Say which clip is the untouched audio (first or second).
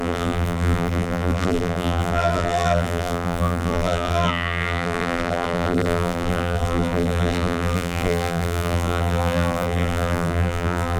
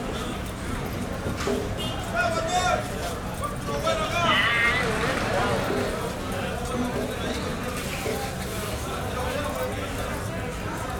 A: second